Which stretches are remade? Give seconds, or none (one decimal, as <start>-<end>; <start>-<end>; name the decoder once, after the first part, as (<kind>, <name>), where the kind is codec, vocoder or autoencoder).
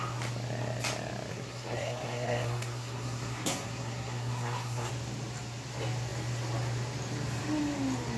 1.3-4.9 (codec, SNAC)